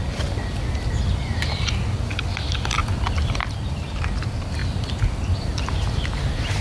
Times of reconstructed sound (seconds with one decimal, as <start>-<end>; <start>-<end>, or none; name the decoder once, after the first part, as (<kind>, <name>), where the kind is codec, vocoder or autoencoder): none